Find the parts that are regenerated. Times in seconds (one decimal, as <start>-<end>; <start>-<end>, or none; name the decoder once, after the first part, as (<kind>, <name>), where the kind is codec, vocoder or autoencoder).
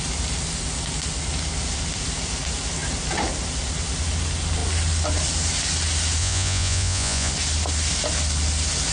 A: 6.2-7.3 (vocoder, Vocos)